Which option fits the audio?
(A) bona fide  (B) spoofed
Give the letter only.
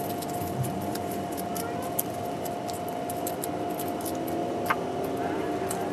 A